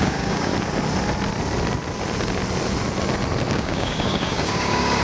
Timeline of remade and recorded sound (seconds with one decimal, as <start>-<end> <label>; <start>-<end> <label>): 0.0-0.5 remade; 0.5-3.5 recorded; 3.5-5.0 remade